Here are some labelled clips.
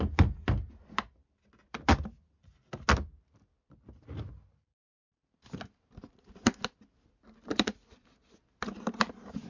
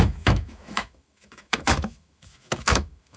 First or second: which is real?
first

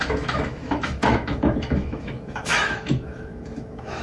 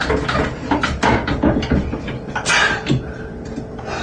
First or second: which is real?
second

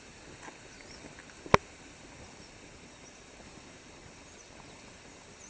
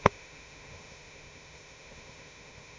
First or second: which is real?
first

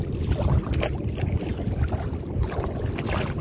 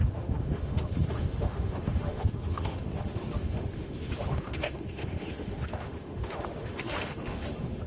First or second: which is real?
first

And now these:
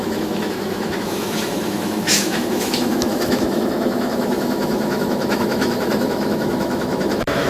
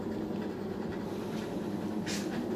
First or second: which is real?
second